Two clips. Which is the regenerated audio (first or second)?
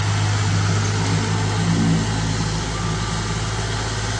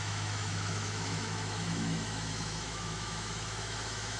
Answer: second